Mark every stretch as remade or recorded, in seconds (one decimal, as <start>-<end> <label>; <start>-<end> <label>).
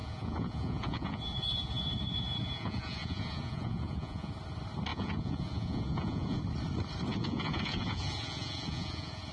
0.0-4.3 remade; 4.3-4.9 recorded; 4.9-6.4 remade; 6.4-7.1 recorded; 7.1-9.3 remade